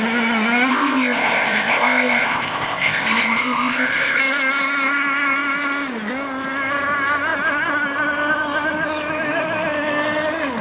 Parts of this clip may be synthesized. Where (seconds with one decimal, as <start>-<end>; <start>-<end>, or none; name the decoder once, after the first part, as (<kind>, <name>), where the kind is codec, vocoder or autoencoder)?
0.7-4.2 (codec, ZipCodec)